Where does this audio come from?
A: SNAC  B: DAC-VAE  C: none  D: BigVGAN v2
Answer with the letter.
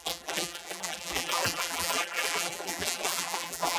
D